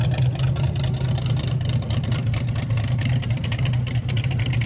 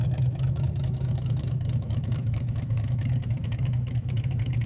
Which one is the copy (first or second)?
second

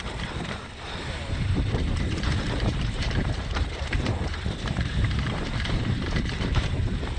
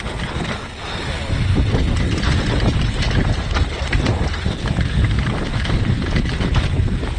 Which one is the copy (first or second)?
first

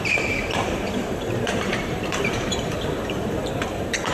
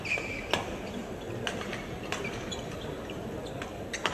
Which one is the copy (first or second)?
first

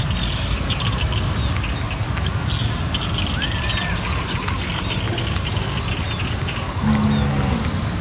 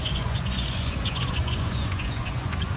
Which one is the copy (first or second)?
second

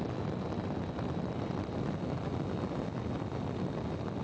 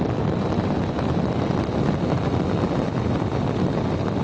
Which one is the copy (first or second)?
second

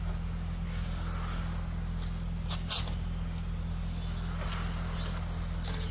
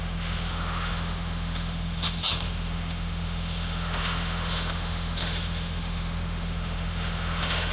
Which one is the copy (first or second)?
second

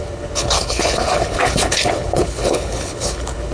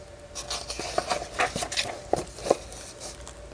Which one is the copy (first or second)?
first